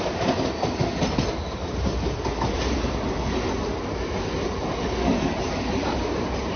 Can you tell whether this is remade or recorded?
recorded